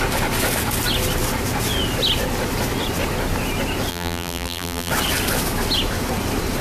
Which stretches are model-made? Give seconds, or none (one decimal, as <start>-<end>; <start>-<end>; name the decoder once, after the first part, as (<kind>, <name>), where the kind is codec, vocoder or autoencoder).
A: 3.9-4.9 (vocoder, BigVGAN v2)